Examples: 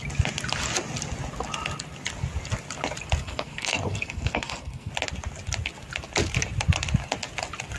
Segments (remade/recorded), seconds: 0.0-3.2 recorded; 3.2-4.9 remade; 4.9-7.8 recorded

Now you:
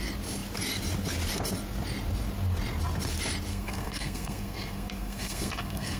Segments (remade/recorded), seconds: 0.0-3.5 recorded; 3.5-6.0 remade

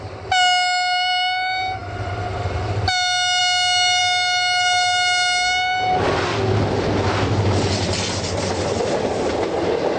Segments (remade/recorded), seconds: 0.0-10.0 recorded